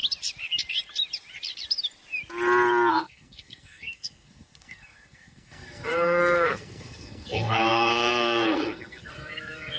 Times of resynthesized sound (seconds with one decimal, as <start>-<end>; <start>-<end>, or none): 2.9-9.8